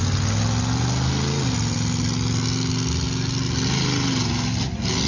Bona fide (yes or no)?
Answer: yes